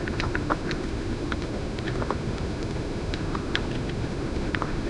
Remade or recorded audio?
remade